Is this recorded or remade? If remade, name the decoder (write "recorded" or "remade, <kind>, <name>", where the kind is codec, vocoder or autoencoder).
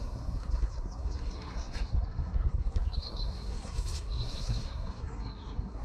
remade, codec, SNAC